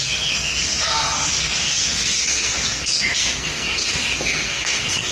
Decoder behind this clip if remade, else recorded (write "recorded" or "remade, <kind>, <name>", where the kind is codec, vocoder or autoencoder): remade, codec, SNAC